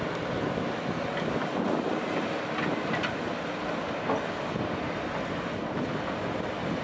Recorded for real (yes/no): yes